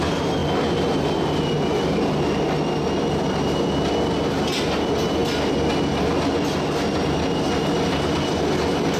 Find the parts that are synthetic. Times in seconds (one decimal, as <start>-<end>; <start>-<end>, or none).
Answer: none